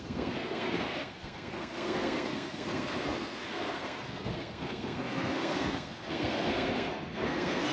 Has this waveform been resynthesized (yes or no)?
yes